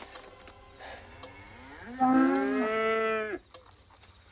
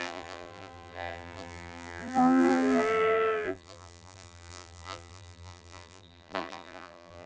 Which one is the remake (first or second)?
second